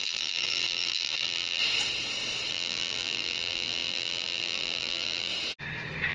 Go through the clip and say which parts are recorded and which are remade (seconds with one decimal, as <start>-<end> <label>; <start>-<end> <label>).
0.0-1.6 remade; 1.6-2.5 recorded; 2.5-5.3 remade; 5.3-6.1 recorded